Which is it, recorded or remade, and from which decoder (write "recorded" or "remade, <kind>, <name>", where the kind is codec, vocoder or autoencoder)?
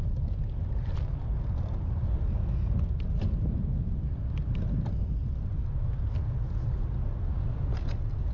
recorded